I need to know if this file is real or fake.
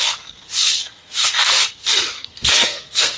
fake